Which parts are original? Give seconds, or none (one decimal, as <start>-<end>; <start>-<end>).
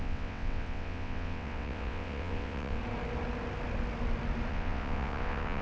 2.8-4.5